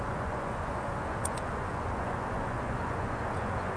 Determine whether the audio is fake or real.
fake